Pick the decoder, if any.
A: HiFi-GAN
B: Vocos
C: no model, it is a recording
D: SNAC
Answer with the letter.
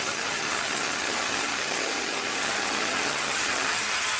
A